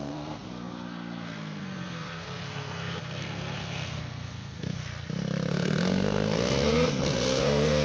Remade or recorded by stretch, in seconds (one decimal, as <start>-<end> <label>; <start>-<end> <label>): 0.0-4.9 remade; 4.9-5.5 recorded; 5.5-7.8 remade